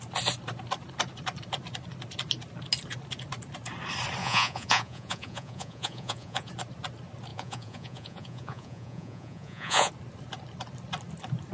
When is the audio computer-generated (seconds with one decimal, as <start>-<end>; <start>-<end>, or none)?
4.2-6.5; 7.3-9.9